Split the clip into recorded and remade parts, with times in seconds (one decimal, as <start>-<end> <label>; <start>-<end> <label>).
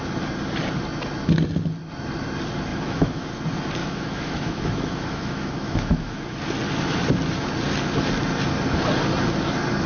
0.0-2.7 recorded; 2.7-3.3 remade; 3.3-3.8 recorded; 3.8-6.2 remade; 6.2-9.9 recorded